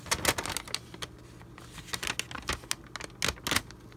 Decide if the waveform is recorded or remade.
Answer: recorded